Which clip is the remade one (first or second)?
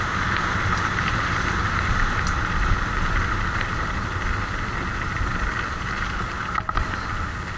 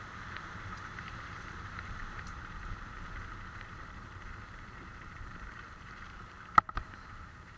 second